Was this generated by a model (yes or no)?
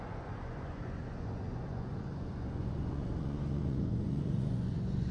yes